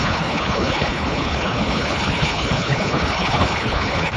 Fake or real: fake